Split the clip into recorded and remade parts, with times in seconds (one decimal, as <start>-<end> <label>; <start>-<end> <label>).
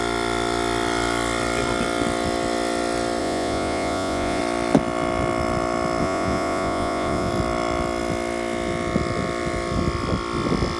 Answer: 0.0-3.2 recorded; 3.2-4.4 remade; 4.4-6.0 recorded; 6.0-7.3 remade; 7.3-10.8 recorded